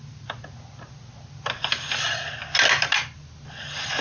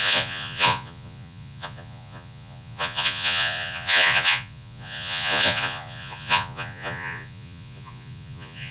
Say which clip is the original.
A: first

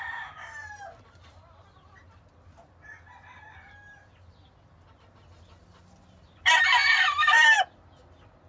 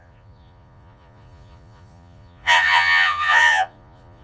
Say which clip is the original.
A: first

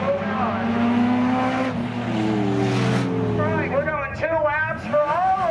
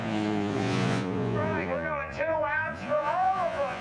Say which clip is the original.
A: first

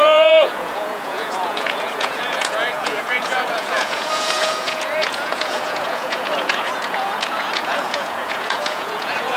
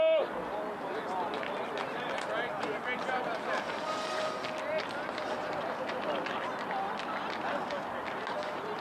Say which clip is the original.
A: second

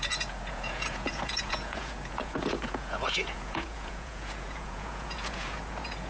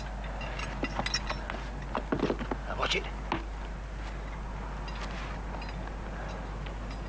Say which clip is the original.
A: second